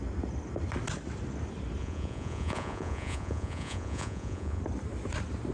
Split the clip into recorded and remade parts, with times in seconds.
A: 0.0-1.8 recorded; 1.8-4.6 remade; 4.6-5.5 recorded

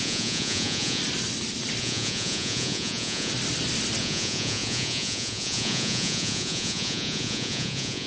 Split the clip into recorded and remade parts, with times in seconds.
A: 0.0-1.0 remade; 1.0-1.8 recorded; 1.8-3.3 remade; 3.3-4.0 recorded; 4.0-8.1 remade

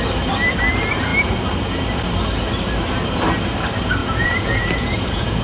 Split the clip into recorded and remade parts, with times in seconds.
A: 0.0-4.0 recorded; 4.0-5.4 remade